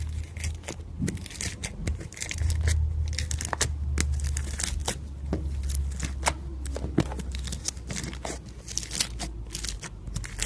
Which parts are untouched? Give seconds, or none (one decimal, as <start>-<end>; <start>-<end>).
0.0-1.9; 2.5-10.5